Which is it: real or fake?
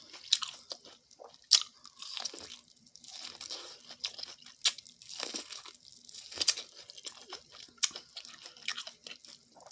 real